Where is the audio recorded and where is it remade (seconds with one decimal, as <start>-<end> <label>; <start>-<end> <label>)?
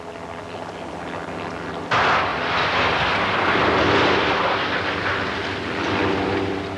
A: 0.0-6.8 recorded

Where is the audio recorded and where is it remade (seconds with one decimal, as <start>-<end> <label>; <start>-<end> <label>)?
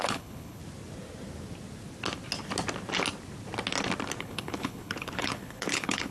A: 0.0-0.6 remade; 0.6-4.2 recorded; 4.2-6.1 remade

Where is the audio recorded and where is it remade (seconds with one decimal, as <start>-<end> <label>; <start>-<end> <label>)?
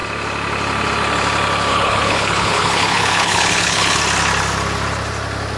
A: 0.0-1.7 recorded; 1.7-4.0 remade; 4.0-5.6 recorded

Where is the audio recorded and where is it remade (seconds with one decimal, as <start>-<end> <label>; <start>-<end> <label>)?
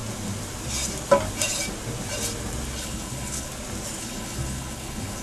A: 0.0-2.8 recorded; 2.8-3.5 remade; 3.5-4.0 recorded; 4.0-5.2 remade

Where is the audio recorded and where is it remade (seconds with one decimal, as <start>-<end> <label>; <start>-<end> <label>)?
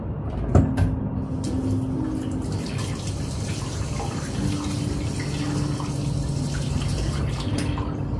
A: 0.0-8.2 recorded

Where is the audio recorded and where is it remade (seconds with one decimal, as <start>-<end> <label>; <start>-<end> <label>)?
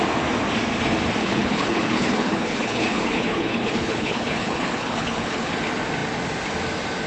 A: 0.0-1.2 recorded; 1.2-5.5 remade; 5.5-7.1 recorded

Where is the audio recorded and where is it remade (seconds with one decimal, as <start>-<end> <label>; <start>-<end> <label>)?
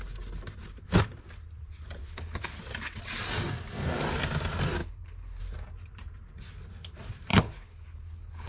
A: 0.0-2.0 recorded; 2.0-2.6 remade; 2.6-4.8 recorded; 4.8-5.4 remade; 5.4-7.3 recorded; 7.3-8.5 remade